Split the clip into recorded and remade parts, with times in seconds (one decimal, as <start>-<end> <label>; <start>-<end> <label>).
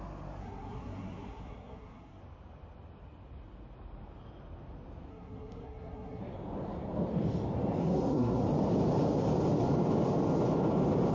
0.0-0.4 recorded; 0.4-2.2 remade; 2.2-5.1 recorded; 5.1-6.2 remade; 6.2-7.8 recorded; 7.8-8.4 remade; 8.4-11.1 recorded